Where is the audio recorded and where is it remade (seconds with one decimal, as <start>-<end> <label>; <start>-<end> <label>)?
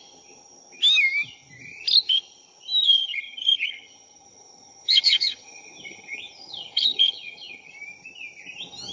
0.0-2.8 recorded; 2.8-7.7 remade; 7.7-8.9 recorded